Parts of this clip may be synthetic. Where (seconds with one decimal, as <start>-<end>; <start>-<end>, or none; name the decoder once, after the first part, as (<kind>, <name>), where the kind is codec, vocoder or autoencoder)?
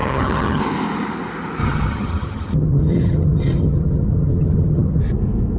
0.0-0.6 (vocoder, HiFi-GAN); 1.6-5.0